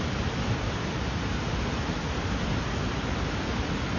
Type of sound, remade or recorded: recorded